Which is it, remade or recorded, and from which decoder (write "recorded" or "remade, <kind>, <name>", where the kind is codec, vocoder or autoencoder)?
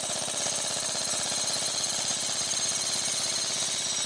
recorded